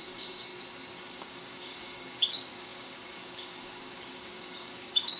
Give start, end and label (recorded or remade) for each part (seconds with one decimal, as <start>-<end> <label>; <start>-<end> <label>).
0.0-0.5 remade; 0.5-1.1 recorded; 1.1-5.2 remade